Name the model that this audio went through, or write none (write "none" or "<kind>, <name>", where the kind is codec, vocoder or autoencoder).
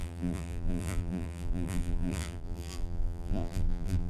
vocoder, BigVGAN v2